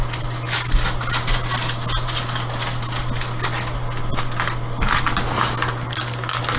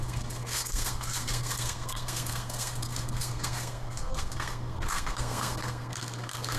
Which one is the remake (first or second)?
second